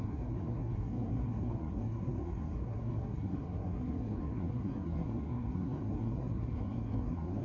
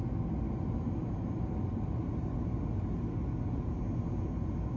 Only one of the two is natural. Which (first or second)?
second